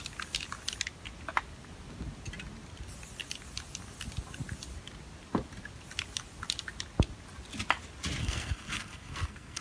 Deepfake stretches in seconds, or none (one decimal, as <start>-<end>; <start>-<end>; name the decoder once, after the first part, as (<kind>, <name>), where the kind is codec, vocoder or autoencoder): 8.2-9.6 (codec, SNAC)